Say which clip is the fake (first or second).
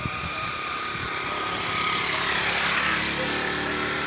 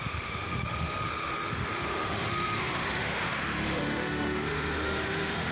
second